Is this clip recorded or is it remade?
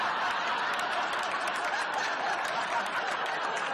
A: recorded